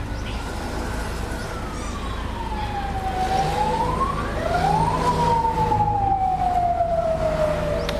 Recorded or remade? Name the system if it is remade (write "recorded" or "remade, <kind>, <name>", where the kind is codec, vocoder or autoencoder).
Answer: recorded